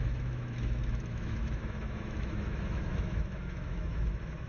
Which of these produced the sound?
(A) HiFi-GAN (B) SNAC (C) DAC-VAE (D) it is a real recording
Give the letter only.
C